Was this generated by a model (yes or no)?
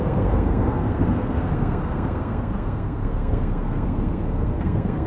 yes